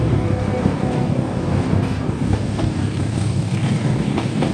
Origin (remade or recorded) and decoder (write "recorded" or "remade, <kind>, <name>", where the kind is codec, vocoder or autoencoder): remade, codec, DAC